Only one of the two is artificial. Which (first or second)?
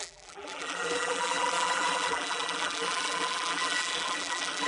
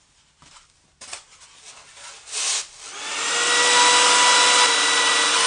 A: first